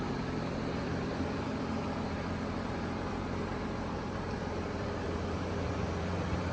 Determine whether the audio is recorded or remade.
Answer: remade